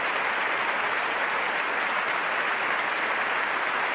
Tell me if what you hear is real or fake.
real